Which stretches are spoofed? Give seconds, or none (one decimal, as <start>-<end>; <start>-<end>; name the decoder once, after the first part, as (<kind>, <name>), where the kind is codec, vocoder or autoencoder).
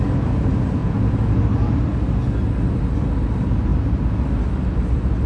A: 0.8-1.4 (vocoder, Vocos)